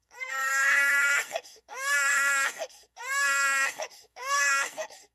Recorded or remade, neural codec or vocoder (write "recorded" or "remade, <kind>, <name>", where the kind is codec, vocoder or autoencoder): remade, codec, SNAC